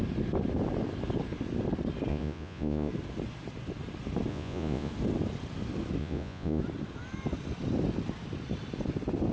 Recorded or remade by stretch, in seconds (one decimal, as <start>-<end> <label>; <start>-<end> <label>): 0.0-2.1 recorded; 2.1-2.9 remade; 2.9-4.3 recorded; 4.3-4.9 remade; 4.9-6.0 recorded; 6.0-6.6 remade; 6.6-9.3 recorded